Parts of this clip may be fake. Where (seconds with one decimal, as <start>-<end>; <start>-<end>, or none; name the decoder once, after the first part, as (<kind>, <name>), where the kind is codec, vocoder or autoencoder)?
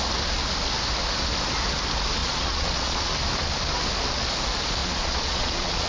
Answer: 2.2-3.1 (vocoder, Vocos); 4.8-5.9